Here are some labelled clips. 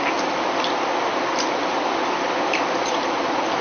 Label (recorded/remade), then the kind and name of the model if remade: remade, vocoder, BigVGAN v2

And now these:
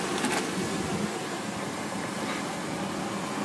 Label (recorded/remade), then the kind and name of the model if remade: recorded